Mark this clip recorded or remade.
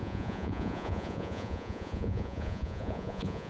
remade